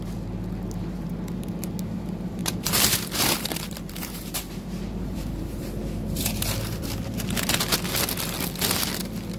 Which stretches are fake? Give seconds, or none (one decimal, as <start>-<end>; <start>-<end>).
2.4-7.6